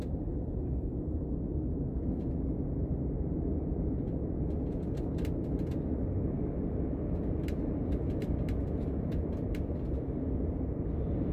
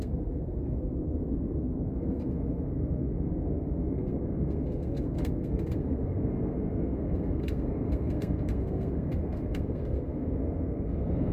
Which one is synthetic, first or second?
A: second